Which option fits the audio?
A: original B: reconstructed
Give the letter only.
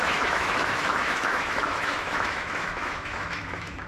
B